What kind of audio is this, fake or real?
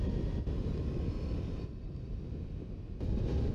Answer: fake